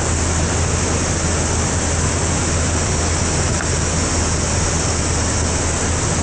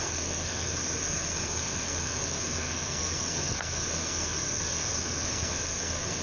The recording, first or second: first